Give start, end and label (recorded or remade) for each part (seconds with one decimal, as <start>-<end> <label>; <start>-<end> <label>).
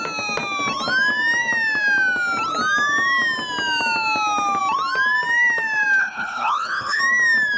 0.0-6.0 recorded; 6.0-7.0 remade; 7.0-7.6 recorded